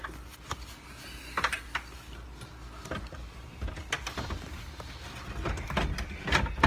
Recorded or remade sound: recorded